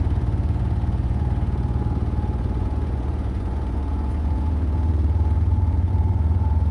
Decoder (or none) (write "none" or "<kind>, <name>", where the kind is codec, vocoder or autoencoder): vocoder, Vocos